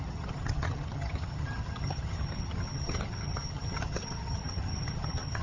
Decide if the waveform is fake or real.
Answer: fake